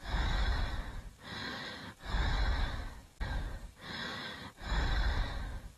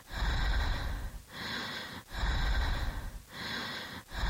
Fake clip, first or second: first